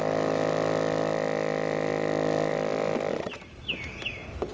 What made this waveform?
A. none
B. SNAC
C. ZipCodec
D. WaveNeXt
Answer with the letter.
A